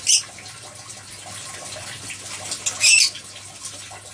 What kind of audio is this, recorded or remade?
recorded